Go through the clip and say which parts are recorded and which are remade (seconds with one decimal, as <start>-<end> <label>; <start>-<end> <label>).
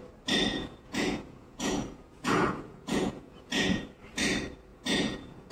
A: 0.0-0.5 recorded; 0.5-3.8 remade; 3.8-4.7 recorded; 4.7-5.5 remade